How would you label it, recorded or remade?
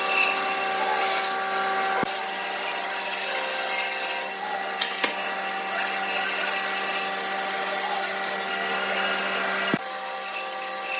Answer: recorded